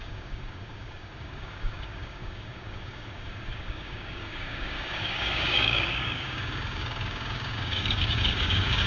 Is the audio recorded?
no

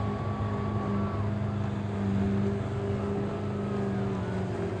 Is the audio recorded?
yes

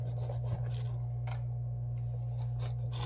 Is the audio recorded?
yes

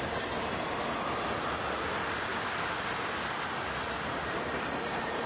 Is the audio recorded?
yes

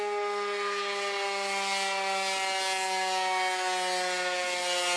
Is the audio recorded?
yes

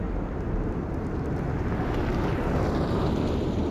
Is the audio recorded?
no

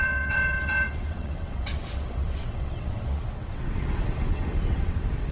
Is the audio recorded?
no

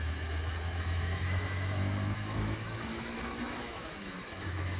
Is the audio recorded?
no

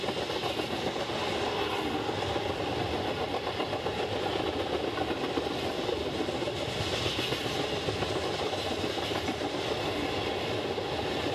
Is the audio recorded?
yes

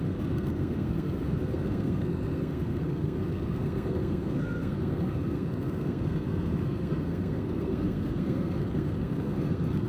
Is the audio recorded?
no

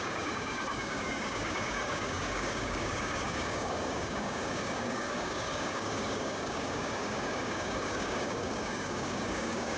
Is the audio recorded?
no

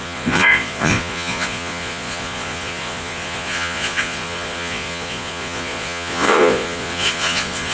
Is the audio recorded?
no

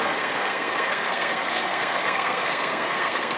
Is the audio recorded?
no